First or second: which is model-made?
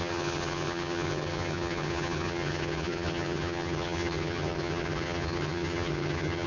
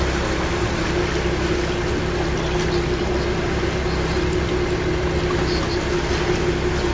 first